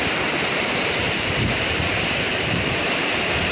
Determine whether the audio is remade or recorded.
remade